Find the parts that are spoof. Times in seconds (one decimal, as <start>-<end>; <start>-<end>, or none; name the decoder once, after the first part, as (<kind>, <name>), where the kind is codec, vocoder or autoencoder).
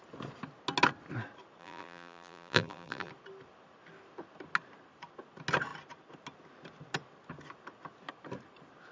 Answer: 1.6-3.1 (vocoder, BigVGAN v2)